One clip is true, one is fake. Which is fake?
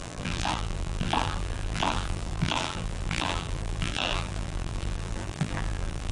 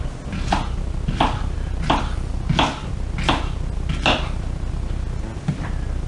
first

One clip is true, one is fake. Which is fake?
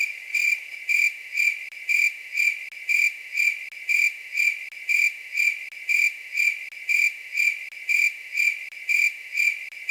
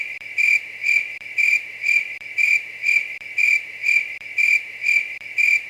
second